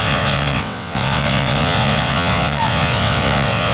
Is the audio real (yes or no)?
no